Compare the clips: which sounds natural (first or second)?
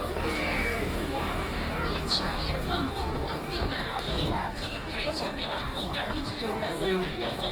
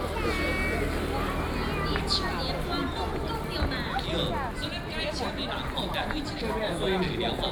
second